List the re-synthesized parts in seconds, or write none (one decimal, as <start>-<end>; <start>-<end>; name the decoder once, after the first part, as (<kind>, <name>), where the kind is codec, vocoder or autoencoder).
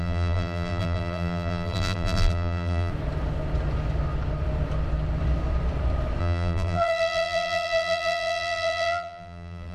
0.0-2.9 (vocoder, BigVGAN v2); 6.2-9.7